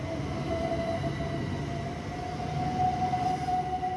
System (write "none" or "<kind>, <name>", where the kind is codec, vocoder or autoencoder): none